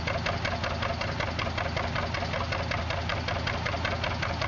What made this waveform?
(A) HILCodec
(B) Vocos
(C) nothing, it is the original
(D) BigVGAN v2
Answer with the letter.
C